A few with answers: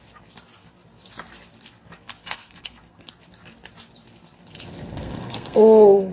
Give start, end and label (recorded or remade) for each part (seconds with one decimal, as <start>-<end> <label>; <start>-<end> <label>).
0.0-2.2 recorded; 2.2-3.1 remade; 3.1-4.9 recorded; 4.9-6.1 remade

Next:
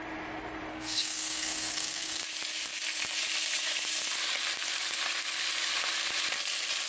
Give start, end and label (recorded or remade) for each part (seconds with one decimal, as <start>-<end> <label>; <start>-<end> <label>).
0.0-0.7 recorded; 0.7-2.2 remade; 2.2-6.9 recorded

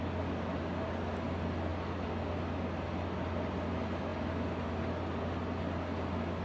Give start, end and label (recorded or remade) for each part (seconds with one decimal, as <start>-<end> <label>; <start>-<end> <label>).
0.0-6.4 recorded

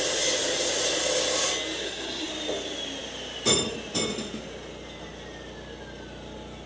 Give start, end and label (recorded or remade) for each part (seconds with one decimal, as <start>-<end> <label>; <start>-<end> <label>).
0.0-1.8 recorded; 1.8-2.3 remade; 2.3-6.7 recorded

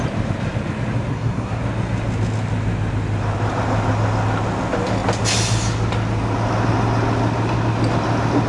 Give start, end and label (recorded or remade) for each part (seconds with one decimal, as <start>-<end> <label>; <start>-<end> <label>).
0.0-1.1 recorded; 1.1-1.6 remade; 1.6-8.5 recorded

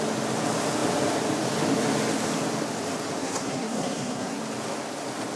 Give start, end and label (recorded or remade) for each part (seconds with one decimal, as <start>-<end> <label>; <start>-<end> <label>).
0.0-3.2 recorded; 3.2-4.4 remade; 4.4-5.4 recorded

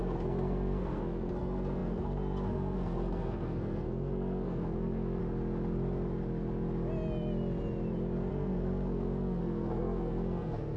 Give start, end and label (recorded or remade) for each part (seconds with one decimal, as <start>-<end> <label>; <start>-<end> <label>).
0.0-5.2 remade; 5.2-8.3 recorded; 8.3-10.8 remade

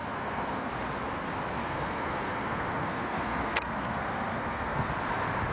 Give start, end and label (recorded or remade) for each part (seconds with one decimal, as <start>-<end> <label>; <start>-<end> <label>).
0.0-0.7 remade; 0.7-1.6 recorded; 1.6-4.9 remade; 4.9-5.5 recorded